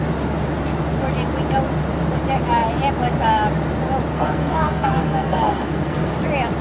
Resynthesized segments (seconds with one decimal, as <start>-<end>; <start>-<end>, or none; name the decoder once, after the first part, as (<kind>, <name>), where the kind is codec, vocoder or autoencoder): 4.1-6.1 (codec, SNAC)

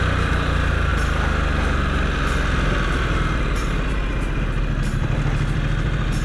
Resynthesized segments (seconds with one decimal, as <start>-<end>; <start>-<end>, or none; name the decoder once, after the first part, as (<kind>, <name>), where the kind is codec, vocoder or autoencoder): 0.0-0.9 (vocoder, BigVGAN v2); 4.6-6.2

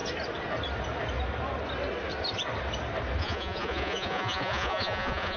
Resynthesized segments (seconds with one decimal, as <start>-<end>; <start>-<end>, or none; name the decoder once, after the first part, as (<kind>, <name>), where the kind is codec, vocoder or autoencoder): 3.2-5.4 (vocoder, Vocos)

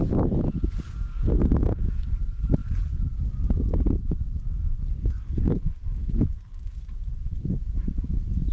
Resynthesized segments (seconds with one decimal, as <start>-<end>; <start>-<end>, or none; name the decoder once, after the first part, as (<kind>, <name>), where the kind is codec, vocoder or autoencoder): 1.1-1.8 (codec, SNAC); 4.5-6.9